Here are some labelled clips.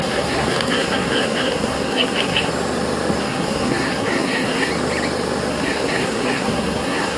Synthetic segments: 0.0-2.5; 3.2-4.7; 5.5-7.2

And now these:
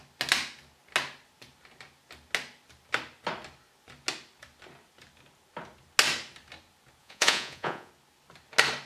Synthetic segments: 7.0-7.9

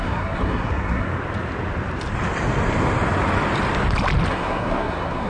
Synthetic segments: 0.0-1.1; 4.3-5.3